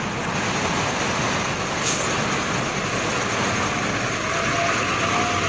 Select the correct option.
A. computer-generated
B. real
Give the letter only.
B